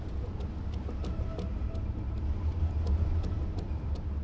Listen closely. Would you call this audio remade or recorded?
recorded